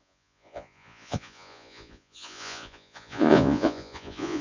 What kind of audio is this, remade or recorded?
remade